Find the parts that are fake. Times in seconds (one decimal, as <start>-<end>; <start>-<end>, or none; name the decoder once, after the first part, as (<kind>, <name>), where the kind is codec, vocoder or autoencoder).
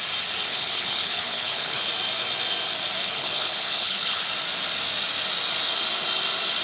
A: 0.5-1.9 (codec, HILCodec); 3.0-4.2